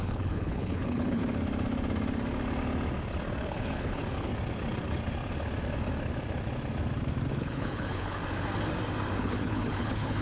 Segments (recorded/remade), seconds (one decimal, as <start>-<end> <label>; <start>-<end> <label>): 0.0-1.2 remade; 1.2-3.4 recorded; 3.4-4.3 remade; 4.3-7.3 recorded; 7.3-8.2 remade; 8.2-9.2 recorded; 9.2-10.2 remade